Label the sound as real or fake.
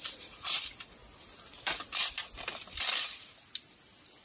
real